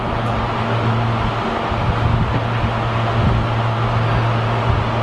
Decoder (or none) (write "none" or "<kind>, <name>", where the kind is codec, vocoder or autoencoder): none